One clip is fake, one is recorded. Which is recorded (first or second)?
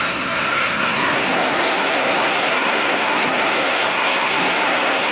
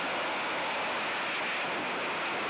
second